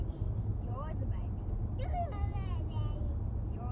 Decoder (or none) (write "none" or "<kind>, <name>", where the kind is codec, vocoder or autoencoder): none